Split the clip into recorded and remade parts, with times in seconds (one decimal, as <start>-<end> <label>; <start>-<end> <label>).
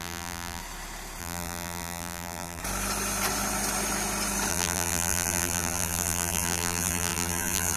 0.0-0.6 remade; 0.6-1.2 recorded; 1.2-2.6 remade; 2.6-4.5 recorded; 4.5-7.8 remade